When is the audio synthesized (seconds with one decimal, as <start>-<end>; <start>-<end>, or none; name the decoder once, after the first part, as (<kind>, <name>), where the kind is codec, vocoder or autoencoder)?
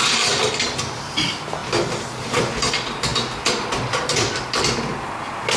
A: none